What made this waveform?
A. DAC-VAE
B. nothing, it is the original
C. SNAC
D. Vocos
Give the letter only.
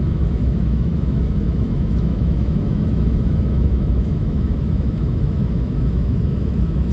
A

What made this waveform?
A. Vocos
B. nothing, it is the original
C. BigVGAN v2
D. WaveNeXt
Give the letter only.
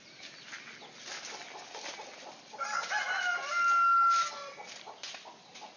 B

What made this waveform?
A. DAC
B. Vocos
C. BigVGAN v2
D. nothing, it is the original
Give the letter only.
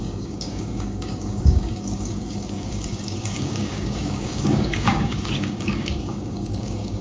A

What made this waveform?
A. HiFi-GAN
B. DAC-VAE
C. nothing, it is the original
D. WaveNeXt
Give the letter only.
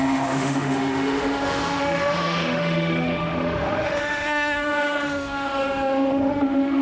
B